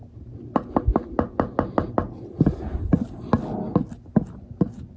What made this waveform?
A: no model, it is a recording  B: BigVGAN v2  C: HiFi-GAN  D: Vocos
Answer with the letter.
A